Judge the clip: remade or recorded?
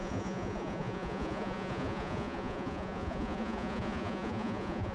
remade